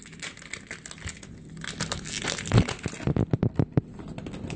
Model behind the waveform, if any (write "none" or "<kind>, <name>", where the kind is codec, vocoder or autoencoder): none